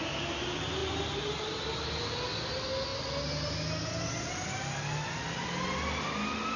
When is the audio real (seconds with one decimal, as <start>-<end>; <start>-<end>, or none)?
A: 0.0-6.6